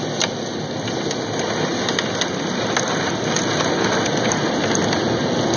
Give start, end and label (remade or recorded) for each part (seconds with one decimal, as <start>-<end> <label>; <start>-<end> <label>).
0.0-5.6 recorded